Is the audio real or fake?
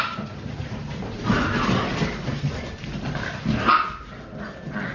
real